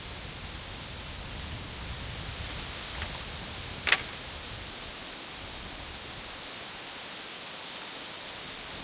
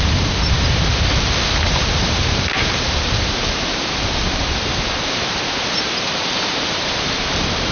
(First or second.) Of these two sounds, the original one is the first